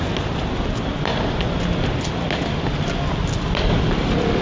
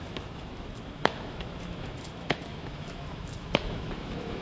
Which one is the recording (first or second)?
first